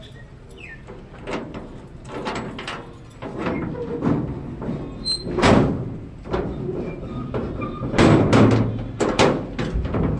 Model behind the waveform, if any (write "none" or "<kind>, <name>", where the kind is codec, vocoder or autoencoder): none